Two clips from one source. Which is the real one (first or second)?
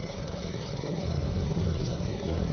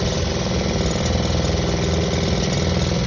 second